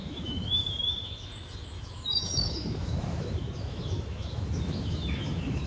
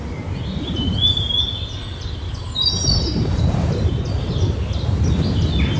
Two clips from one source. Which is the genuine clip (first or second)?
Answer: second